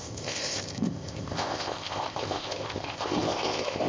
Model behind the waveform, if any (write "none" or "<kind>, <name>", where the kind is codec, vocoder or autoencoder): codec, ZipCodec